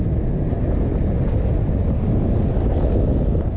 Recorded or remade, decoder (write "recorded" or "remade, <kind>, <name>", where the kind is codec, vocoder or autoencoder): recorded